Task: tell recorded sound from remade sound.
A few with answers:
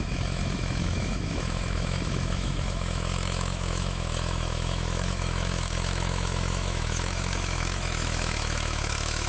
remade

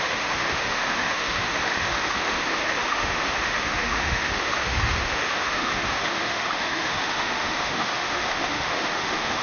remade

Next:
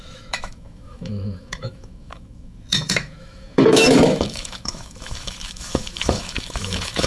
remade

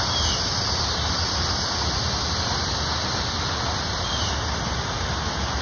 recorded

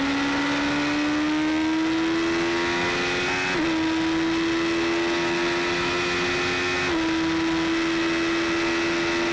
recorded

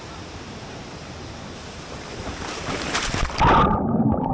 recorded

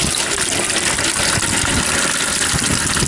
recorded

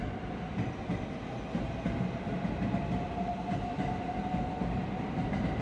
recorded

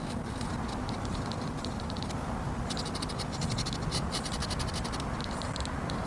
recorded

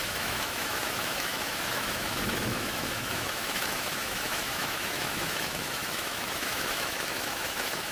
remade